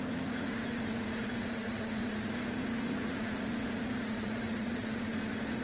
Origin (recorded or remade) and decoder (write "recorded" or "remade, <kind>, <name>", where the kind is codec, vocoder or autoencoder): remade, vocoder, Vocos